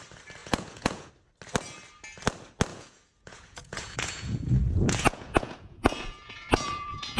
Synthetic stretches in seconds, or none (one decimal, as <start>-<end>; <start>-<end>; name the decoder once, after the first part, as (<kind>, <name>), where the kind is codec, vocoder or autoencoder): 0.4-1.1 (vocoder, Vocos); 2.7-7.2